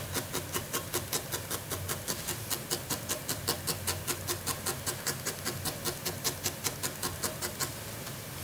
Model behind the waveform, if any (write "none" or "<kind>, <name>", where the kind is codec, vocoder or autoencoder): none